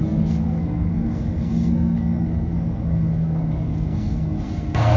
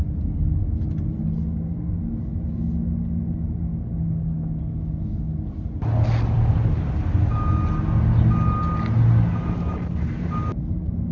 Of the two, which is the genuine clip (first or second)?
second